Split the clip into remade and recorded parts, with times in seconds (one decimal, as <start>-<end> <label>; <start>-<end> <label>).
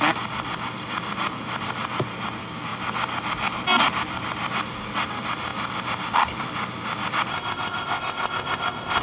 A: 0.0-7.3 recorded; 7.3-9.0 remade